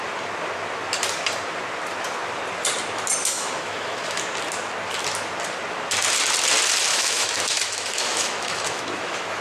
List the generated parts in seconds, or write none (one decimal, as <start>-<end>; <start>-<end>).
3.2-4.2; 6.9-9.4